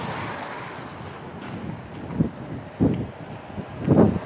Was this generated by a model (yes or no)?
no